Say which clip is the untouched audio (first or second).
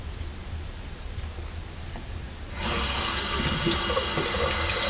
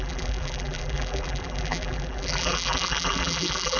first